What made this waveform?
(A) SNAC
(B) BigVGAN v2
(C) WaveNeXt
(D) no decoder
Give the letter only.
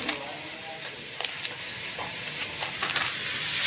D